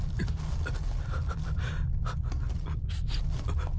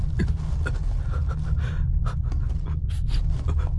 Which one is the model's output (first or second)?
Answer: first